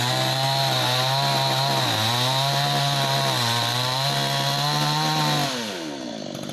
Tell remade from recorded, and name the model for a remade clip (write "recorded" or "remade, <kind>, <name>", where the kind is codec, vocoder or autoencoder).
recorded